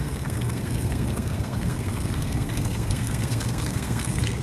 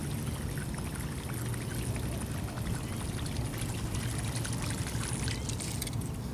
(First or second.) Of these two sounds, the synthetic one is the first